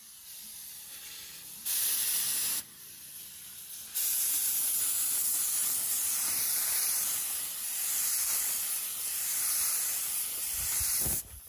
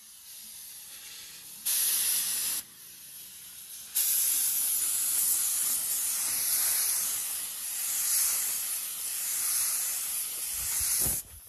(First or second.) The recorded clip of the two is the second